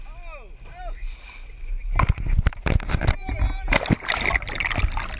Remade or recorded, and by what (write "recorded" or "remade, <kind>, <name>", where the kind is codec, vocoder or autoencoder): recorded